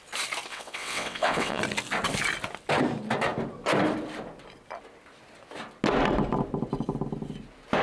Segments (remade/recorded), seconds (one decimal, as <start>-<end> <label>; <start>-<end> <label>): 0.0-0.5 recorded; 0.5-1.6 remade; 1.6-7.8 recorded